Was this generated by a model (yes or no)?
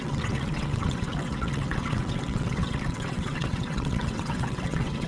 yes